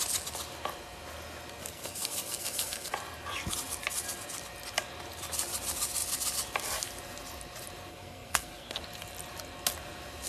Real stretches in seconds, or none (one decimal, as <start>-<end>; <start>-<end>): 0.0-1.6; 2.9-7.9; 8.8-10.3